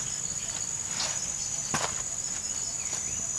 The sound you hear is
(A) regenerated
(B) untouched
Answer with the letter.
B